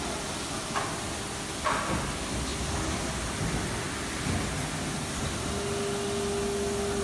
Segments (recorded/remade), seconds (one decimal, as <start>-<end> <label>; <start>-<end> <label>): 0.0-7.0 recorded